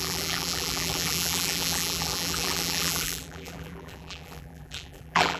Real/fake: fake